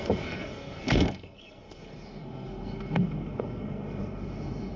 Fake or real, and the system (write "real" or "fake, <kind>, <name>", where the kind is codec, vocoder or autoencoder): fake, codec, SNAC